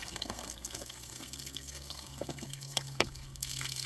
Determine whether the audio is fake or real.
fake